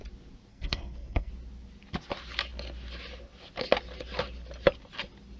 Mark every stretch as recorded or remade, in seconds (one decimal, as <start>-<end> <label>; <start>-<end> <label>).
0.0-0.5 recorded; 0.5-1.3 remade; 1.3-5.4 recorded

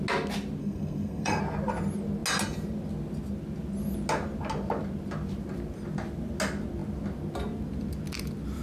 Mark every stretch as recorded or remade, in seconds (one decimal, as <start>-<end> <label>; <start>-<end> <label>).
0.0-0.6 recorded; 0.6-1.4 remade; 1.4-8.6 recorded

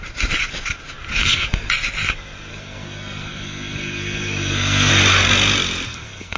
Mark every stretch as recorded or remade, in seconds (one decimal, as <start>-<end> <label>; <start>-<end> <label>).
0.0-1.1 recorded; 1.1-1.7 remade; 1.7-2.5 recorded; 2.5-4.9 remade; 4.9-5.9 recorded; 5.9-6.4 remade